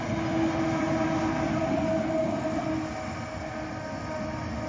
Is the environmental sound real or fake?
real